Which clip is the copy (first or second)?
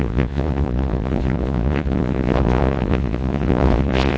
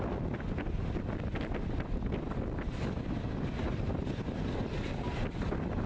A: first